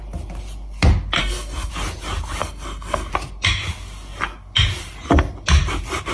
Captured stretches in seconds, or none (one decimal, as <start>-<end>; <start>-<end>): 0.0-1.2; 1.7-2.4; 3.1-6.1

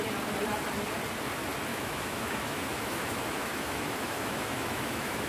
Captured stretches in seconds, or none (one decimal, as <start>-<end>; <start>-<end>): 0.0-1.7

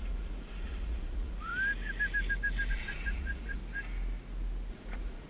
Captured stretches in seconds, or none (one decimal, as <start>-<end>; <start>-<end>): 1.5-2.7; 3.6-4.7

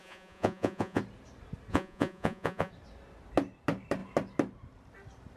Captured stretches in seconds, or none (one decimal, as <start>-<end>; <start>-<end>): 1.0-1.7; 2.7-5.4

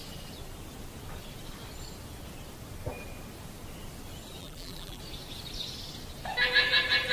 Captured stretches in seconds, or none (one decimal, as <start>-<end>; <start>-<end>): 0.0-4.4; 5.0-7.1

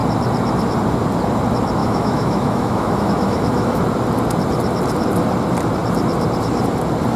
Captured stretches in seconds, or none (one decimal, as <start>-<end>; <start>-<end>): 0.0-1.8; 3.8-7.2

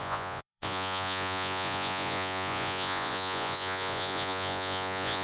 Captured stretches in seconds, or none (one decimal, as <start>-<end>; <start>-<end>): none

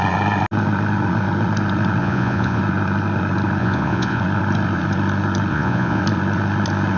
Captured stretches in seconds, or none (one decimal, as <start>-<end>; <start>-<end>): 0.0-2.0; 2.6-3.6; 4.2-5.5; 6.0-7.0